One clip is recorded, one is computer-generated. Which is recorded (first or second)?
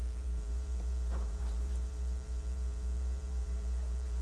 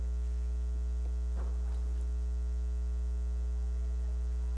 second